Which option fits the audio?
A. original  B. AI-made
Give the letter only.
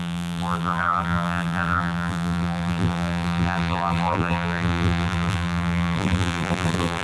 B